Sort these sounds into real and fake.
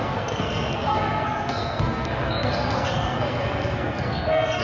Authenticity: fake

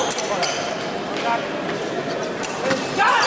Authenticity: real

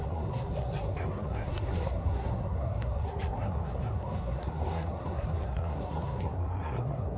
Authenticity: fake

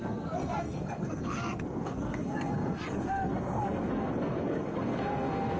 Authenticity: fake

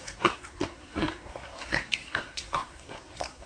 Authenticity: fake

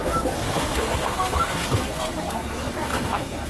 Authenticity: fake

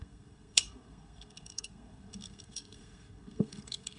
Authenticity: fake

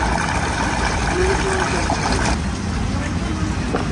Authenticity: real